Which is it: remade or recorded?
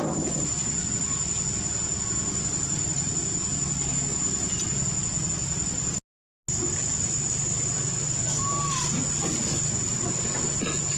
recorded